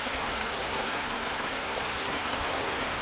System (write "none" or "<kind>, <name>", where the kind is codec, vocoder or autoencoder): codec, SNAC